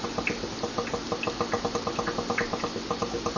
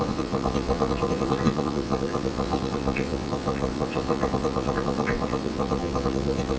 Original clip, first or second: first